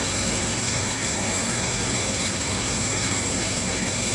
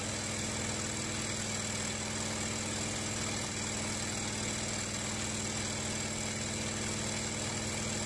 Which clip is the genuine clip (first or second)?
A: second